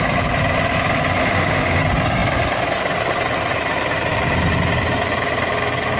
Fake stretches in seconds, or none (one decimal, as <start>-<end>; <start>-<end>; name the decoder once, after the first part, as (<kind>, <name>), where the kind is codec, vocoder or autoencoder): 1.2-1.8 (autoencoder, DAC-VAE)